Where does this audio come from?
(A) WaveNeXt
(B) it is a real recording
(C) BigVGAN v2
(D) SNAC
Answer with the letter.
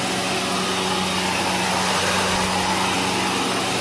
B